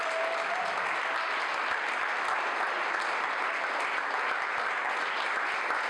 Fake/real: real